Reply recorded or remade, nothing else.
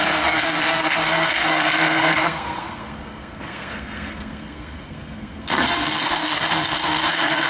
remade